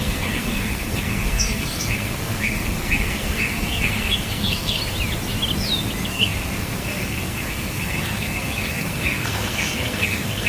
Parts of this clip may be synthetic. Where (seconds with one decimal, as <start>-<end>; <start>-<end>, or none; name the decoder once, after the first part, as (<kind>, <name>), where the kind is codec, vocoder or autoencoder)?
0.0-4.8 (codec, SNAC); 6.1-10.5